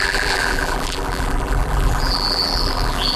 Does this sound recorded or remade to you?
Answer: remade